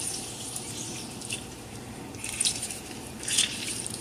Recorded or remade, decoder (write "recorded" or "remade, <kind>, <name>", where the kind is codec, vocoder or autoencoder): remade, vocoder, BigVGAN v2